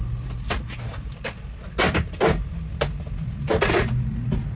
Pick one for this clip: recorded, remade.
recorded